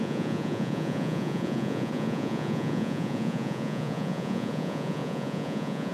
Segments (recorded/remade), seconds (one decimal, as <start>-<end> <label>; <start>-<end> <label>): 0.0-5.9 remade